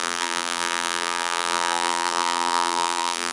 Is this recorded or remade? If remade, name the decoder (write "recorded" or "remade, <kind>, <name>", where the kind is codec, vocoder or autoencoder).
remade, vocoder, BigVGAN v2